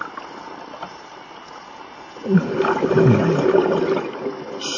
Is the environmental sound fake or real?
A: real